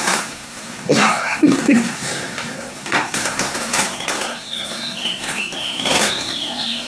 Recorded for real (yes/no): no